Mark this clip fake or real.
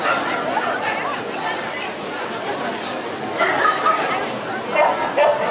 real